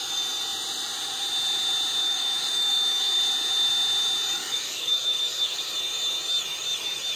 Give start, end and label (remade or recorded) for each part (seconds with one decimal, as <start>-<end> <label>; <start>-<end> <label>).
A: 0.0-2.0 recorded; 2.0-3.2 remade; 3.2-4.4 recorded; 4.4-5.7 remade; 5.7-7.2 recorded